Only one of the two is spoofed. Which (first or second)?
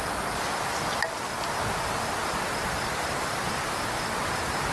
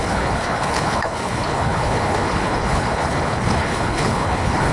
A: second